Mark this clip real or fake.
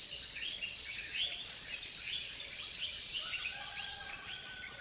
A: fake